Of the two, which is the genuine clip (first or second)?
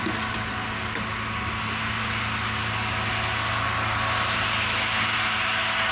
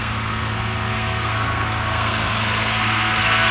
first